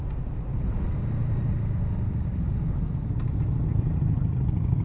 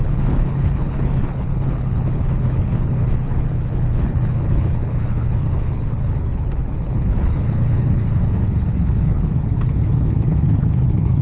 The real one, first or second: first